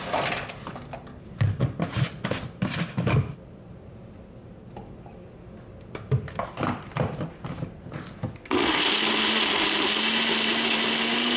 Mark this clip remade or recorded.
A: recorded